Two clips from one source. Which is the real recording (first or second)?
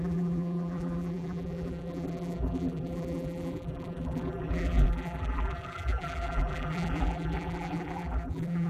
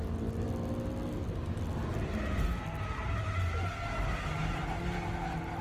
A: second